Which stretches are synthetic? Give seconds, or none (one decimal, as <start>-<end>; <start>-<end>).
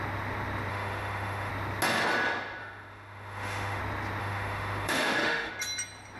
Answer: 0.7-1.5; 2.6-3.8; 4.2-5.5